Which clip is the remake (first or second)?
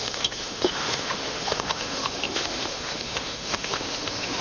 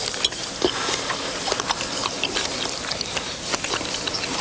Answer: first